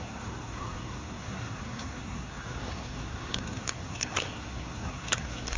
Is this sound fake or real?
fake